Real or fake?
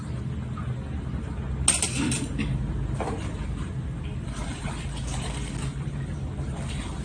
real